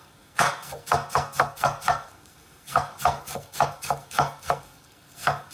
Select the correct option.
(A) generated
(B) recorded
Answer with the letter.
A